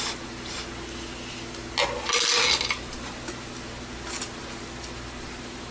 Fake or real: real